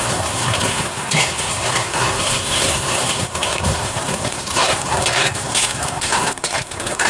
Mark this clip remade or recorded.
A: remade